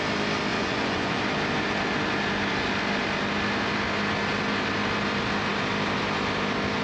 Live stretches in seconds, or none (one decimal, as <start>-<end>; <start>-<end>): 0.0-0.5; 1.2-6.8